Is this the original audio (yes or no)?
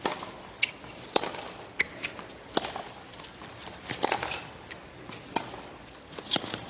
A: yes